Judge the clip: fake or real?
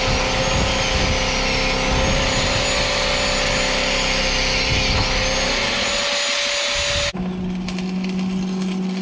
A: real